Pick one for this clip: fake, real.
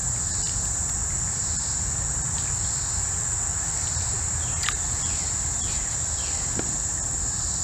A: real